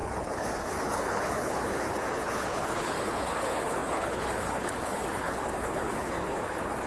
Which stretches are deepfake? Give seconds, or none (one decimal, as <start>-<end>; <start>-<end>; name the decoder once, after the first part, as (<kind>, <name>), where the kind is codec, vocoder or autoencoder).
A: 0.0-6.9 (codec, HILCodec)